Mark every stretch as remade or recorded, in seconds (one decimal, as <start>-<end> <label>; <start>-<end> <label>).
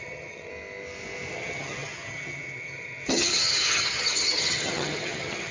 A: 0.0-0.5 remade; 0.5-1.3 recorded; 1.3-5.5 remade